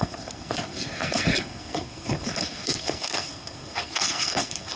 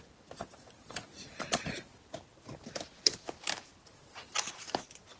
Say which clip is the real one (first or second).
second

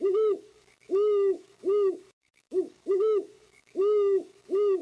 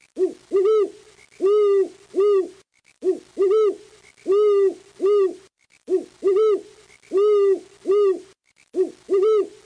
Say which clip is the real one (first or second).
second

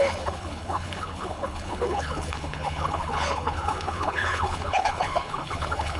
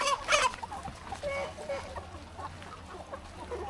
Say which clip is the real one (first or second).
second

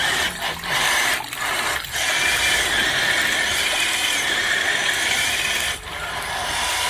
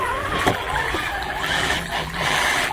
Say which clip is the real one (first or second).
first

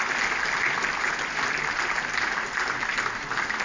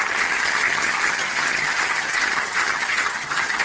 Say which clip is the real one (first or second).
first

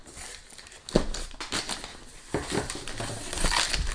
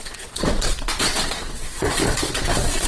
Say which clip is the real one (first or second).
first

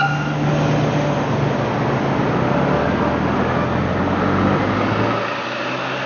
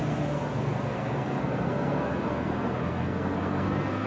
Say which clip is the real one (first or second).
first